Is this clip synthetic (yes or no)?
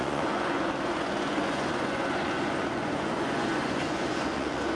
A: yes